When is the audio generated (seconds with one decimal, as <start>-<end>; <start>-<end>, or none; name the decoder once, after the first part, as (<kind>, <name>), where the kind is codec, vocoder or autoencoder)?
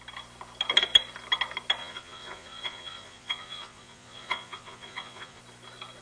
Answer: 1.8-5.4 (vocoder, Vocos)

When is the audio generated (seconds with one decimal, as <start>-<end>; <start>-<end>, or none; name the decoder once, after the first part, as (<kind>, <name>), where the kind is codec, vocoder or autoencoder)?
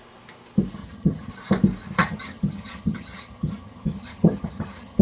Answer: 0.8-1.3 (vocoder, HiFi-GAN); 2.0-5.0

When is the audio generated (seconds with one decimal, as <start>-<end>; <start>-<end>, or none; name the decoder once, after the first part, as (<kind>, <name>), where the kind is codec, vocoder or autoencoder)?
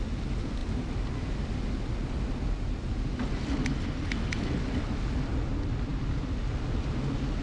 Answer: none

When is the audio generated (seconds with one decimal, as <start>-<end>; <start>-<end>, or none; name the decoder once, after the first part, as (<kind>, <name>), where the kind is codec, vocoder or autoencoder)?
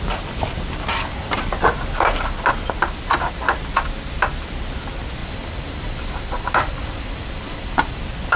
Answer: 5.2-8.0 (vocoder, BigVGAN v2)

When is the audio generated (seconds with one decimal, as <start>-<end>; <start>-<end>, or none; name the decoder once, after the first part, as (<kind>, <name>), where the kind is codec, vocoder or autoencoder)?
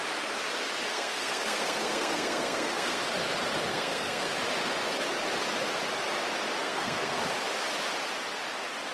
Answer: 0.9-3.0 (codec, SNAC); 3.7-4.3; 6.6-7.2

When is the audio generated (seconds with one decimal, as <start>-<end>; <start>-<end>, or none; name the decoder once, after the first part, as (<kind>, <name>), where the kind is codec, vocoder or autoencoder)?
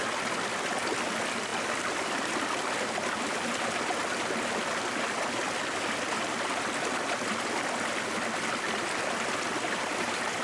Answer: none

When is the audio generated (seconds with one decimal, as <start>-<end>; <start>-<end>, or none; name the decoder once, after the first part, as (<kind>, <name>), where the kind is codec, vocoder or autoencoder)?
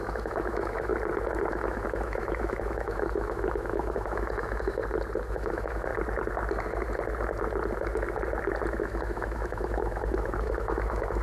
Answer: 0.0-0.9 (autoencoder, DAC-VAE); 1.5-4.8; 5.3-5.9; 8.8-11.2